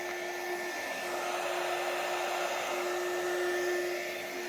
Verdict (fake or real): real